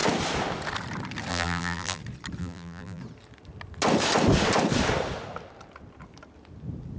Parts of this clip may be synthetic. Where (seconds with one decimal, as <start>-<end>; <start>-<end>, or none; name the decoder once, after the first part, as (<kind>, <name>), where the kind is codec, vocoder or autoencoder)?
1.3-2.0 (vocoder, BigVGAN v2); 2.4-3.0